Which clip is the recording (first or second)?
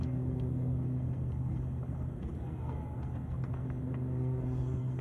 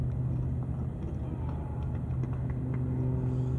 second